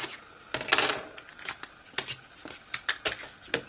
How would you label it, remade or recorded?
recorded